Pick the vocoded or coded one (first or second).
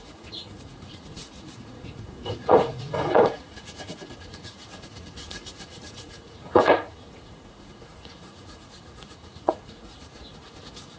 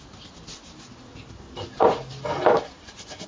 first